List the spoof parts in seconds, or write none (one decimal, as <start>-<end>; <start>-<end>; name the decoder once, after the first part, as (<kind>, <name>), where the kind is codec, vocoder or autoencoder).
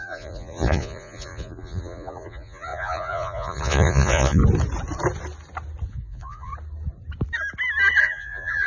0.0-4.4 (vocoder, Vocos); 5.9-6.5; 8.0-8.7